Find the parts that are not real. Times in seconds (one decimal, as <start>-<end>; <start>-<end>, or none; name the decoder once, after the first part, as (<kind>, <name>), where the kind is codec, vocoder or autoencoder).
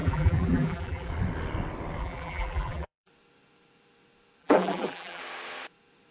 0.0-1.1 (vocoder, BigVGAN v2); 2.0-3.1; 4.4-5.2